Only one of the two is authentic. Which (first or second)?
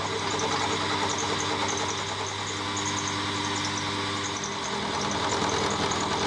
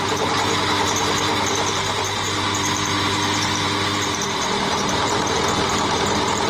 first